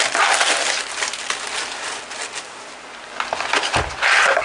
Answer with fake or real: real